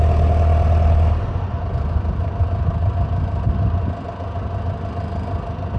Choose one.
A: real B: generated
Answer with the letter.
A